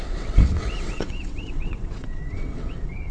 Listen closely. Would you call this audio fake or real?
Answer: fake